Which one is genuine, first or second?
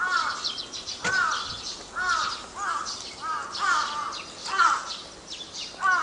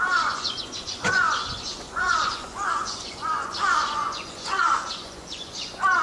first